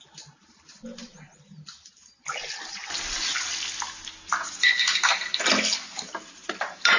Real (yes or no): yes